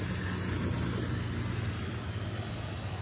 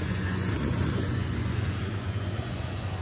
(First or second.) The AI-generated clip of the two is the second